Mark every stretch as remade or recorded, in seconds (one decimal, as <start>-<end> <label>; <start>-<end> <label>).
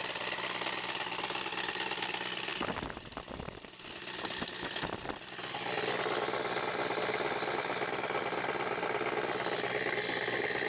0.0-10.7 recorded